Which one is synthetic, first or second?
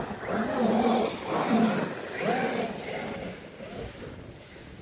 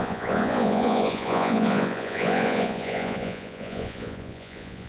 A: second